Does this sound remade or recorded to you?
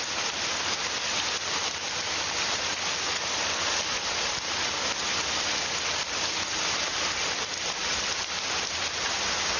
recorded